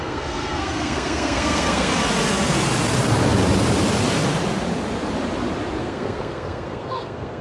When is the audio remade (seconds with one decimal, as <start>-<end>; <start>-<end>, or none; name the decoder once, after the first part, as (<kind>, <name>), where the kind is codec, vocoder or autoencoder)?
0.0-1.9 (codec, SNAC); 5.8-7.4